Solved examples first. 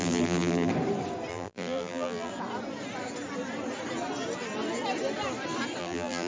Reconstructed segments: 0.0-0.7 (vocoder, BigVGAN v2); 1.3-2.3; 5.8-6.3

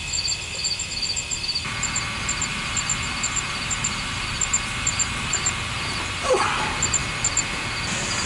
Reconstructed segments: 2.5-6.4 (vocoder, BigVGAN v2)